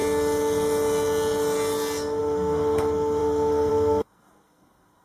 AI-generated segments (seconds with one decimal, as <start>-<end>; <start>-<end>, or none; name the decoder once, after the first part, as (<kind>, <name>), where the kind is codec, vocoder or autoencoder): 2.2-5.0 (codec, SNAC)